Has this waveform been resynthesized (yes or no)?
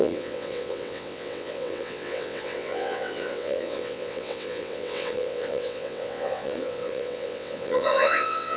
yes